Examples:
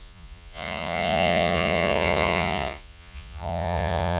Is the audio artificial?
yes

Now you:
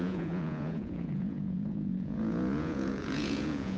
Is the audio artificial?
yes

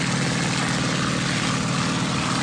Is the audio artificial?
no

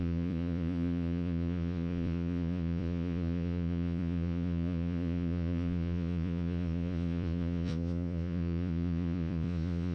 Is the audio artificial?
yes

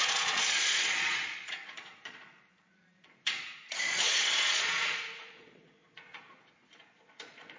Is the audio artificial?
yes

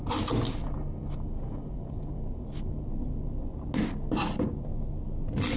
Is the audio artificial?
no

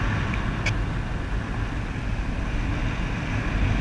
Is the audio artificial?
no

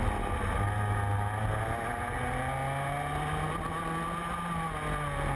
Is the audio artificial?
no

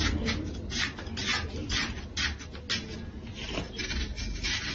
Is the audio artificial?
no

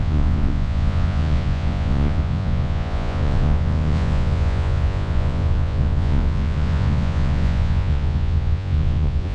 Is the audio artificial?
yes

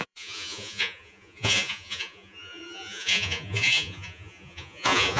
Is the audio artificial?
yes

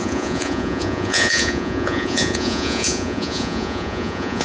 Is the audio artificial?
yes